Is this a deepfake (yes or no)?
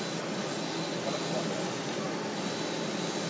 no